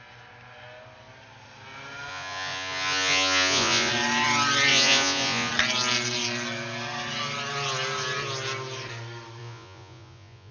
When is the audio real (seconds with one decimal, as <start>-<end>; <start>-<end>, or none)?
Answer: 0.0-2.1; 3.9-4.7; 5.5-9.4

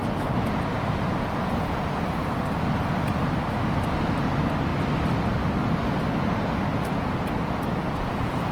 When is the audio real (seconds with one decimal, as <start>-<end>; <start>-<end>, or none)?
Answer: 1.9-6.7

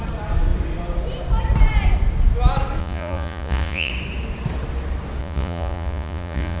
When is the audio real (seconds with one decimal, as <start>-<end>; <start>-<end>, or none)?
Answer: 0.0-2.8; 3.9-5.2

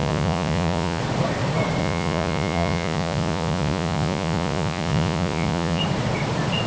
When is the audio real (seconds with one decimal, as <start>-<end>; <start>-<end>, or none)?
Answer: 1.0-1.8; 5.8-6.7

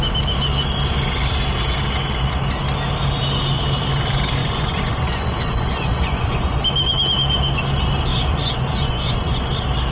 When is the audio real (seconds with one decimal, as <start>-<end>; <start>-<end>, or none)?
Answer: 0.0-4.4; 6.6-8.1; 9.5-9.9

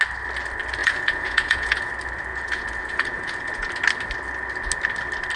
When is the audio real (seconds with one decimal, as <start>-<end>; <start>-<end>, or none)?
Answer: 0.0-0.8; 1.9-2.3; 3.7-5.4

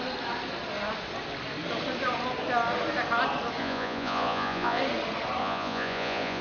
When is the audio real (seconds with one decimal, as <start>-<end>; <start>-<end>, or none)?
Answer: 0.0-3.6; 4.8-5.4

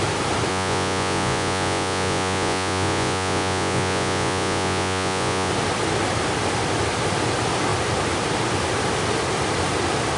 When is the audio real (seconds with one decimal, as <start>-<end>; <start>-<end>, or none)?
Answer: 0.0-0.5; 5.5-10.2